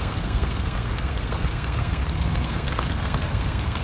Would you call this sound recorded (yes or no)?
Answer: no